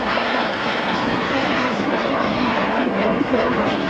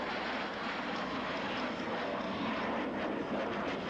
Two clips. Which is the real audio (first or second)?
second